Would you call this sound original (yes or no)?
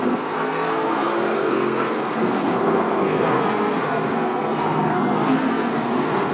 no